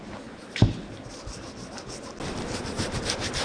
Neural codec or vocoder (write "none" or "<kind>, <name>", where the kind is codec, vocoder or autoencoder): none